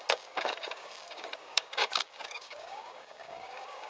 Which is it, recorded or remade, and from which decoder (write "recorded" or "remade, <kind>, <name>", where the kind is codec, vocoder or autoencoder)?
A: remade, codec, DAC